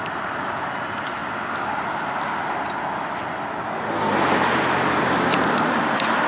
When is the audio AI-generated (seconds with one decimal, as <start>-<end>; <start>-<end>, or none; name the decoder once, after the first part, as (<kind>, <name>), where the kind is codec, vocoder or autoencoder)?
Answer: 0.0-1.2 (vocoder, BigVGAN v2); 5.0-6.3